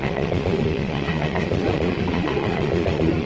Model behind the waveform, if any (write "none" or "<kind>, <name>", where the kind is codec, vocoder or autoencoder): vocoder, Vocos